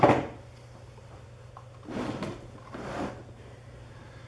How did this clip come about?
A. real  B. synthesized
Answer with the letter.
A